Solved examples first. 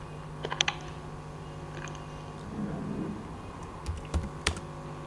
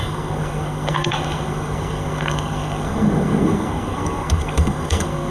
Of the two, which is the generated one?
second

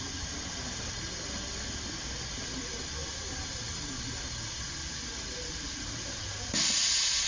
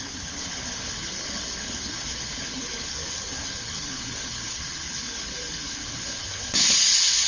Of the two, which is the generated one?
second